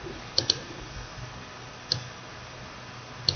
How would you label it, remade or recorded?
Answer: recorded